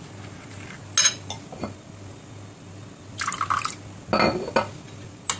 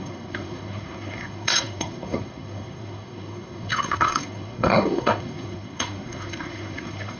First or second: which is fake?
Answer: second